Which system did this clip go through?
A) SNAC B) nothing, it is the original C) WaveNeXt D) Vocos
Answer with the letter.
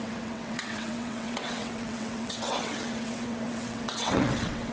C